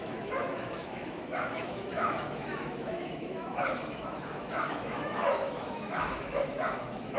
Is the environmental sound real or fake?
fake